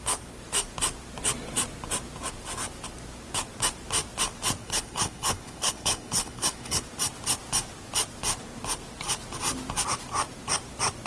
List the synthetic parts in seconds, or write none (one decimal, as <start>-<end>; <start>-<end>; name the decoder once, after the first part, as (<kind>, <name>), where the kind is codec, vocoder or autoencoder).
4.6-6.8 (codec, HILCodec)